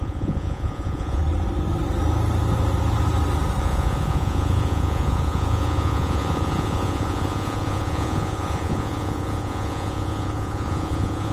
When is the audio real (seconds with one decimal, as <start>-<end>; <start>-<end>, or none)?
1.2-3.6